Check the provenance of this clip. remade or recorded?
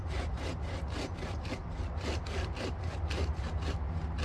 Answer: recorded